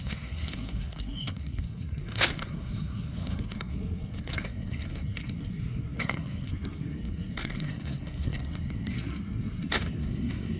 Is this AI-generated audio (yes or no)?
yes